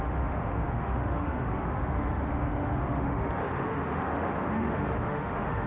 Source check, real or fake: fake